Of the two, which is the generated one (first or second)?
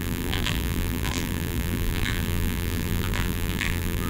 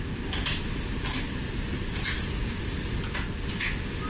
first